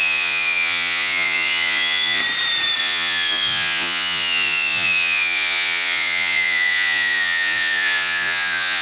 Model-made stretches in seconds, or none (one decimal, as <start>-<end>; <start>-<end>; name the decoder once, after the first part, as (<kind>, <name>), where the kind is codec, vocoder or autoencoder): 0.0-2.2 (vocoder, Vocos); 2.8-8.8